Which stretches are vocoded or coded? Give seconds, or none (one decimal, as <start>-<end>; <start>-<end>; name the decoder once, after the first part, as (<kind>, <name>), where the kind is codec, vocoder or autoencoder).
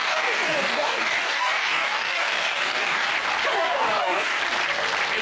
0.0-3.1 (codec, DAC); 3.5-4.4